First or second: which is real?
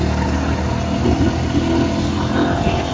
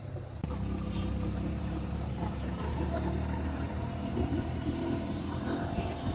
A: first